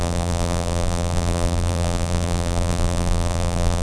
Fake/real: fake